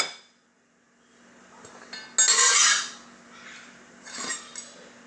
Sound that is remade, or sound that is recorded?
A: recorded